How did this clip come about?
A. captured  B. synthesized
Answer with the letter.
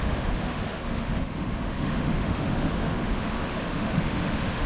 B